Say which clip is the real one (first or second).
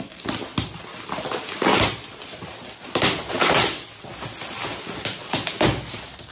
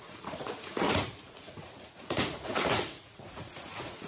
first